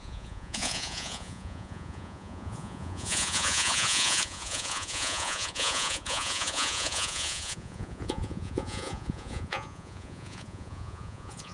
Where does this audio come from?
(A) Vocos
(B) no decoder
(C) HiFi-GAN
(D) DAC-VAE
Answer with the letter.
A